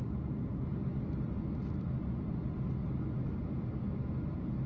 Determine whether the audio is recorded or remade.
recorded